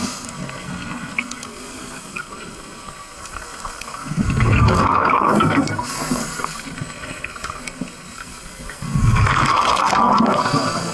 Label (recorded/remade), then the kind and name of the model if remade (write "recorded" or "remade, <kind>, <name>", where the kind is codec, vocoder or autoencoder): remade, codec, SNAC